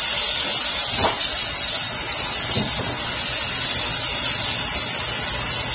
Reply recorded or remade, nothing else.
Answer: recorded